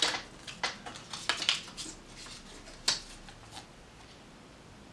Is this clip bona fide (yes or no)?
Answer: yes